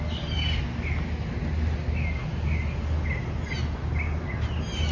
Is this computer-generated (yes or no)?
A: no